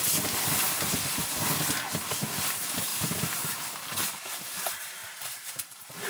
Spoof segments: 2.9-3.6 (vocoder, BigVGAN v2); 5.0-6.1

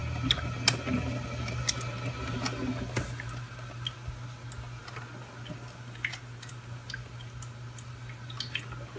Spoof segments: none

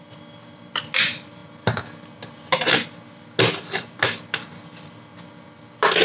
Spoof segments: none

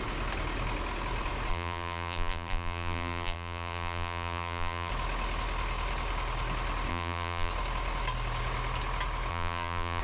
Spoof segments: 1.5-4.9 (vocoder, BigVGAN v2); 6.9-7.5; 9.3-10.0

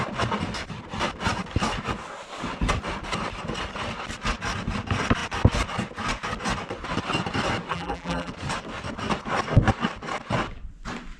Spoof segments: 7.7-8.3 (vocoder, BigVGAN v2)

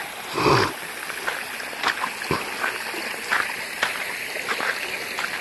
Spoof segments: 3.3-4.0 (vocoder, BigVGAN v2)

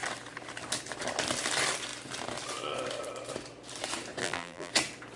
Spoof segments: 4.2-4.7 (vocoder, BigVGAN v2)

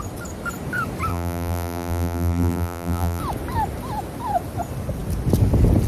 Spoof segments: 1.1-3.2 (vocoder, BigVGAN v2)